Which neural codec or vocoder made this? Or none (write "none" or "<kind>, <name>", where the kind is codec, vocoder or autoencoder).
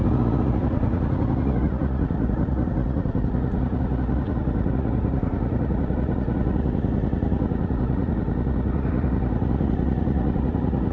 vocoder, Vocos